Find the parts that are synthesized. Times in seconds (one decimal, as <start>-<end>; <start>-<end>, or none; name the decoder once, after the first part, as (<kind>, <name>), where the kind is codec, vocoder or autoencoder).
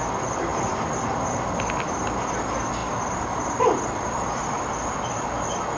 0.5-1.3 (vocoder, BigVGAN v2); 2.8-4.4